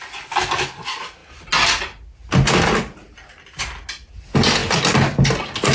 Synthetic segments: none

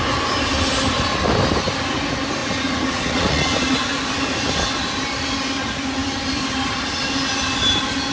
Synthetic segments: 2.4-3.8 (vocoder, Vocos)

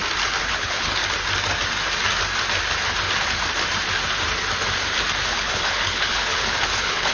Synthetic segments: 0.5-1.0 (codec, HILCodec); 5.3-7.1

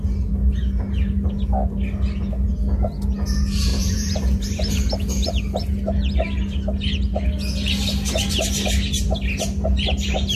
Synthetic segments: 3.7-4.9 (vocoder, BigVGAN v2)

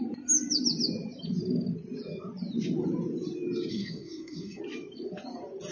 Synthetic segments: 3.7-4.6 (codec, SNAC)

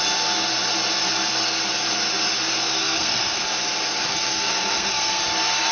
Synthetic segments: 2.8-3.4 (codec, SNAC); 4.1-5.2

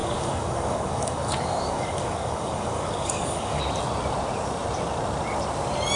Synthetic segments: 0.0-3.6 (codec, DAC)